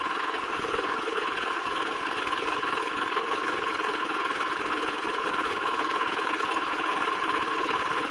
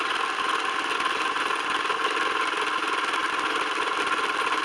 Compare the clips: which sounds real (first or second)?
second